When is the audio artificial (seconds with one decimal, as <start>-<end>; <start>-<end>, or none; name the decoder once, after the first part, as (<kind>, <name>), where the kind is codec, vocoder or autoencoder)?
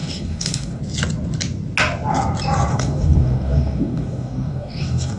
0.0-0.8 (codec, DAC); 2.7-5.2